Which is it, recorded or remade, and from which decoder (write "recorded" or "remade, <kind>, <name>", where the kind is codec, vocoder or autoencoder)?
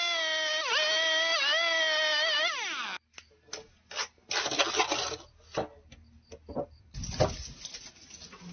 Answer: recorded